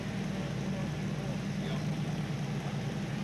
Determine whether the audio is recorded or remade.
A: recorded